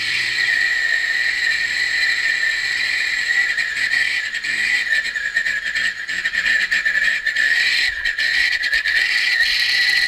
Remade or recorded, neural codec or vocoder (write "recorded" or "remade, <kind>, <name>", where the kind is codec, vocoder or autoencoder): remade, vocoder, BigVGAN v2